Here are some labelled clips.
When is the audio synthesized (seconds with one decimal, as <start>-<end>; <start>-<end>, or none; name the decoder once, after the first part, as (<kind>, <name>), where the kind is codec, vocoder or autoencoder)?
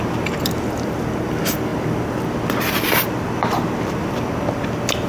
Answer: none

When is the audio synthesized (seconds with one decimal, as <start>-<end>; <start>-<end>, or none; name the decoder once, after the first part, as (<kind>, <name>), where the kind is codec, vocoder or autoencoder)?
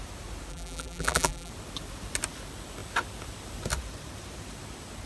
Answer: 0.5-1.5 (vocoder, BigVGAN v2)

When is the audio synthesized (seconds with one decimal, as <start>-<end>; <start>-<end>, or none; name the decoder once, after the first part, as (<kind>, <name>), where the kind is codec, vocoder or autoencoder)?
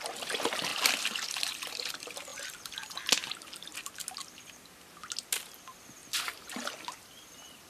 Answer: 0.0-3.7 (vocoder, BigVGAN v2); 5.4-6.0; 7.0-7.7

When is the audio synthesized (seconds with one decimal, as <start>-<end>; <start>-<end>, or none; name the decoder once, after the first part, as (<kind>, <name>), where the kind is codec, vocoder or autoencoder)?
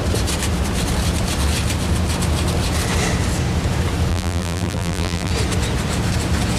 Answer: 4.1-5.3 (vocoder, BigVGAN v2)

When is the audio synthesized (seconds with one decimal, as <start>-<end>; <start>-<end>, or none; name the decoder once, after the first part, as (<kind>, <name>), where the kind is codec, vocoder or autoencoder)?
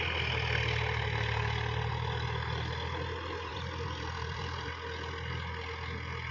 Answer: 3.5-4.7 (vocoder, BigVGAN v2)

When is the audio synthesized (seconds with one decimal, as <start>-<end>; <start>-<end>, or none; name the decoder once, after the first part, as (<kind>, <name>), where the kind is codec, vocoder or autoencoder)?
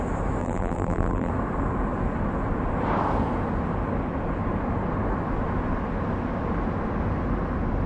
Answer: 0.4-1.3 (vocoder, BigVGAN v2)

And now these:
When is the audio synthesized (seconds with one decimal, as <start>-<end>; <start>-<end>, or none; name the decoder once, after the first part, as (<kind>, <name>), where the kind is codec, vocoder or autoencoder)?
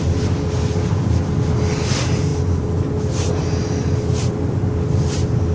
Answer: none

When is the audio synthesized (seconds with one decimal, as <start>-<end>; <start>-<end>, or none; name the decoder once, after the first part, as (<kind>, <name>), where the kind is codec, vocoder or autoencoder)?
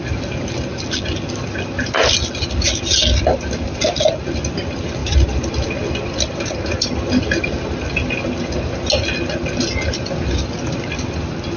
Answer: 5.0-7.9 (vocoder, BigVGAN v2)